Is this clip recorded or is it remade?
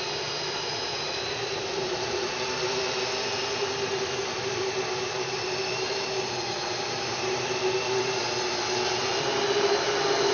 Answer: remade